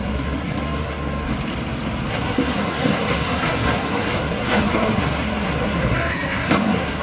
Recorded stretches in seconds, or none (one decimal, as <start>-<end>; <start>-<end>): 1.3-2.1